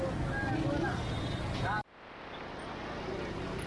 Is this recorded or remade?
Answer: recorded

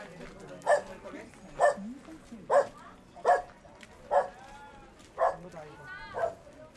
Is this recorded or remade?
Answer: recorded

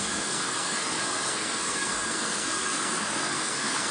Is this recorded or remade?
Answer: remade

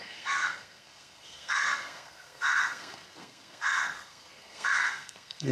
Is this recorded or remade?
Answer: remade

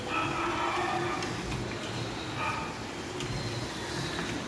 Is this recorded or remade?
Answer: recorded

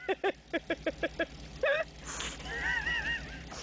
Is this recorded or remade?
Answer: recorded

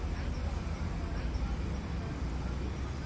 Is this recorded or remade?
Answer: recorded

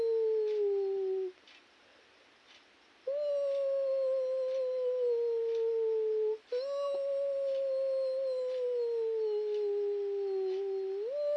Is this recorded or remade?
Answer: recorded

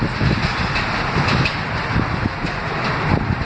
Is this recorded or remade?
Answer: recorded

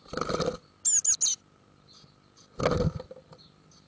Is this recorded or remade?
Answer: recorded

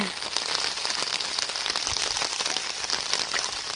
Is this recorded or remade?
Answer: recorded